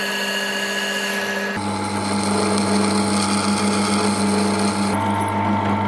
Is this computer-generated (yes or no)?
no